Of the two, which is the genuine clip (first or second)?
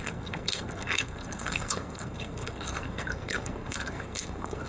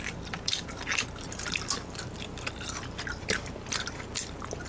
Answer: second